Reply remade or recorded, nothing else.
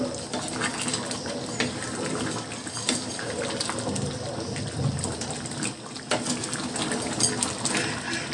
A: recorded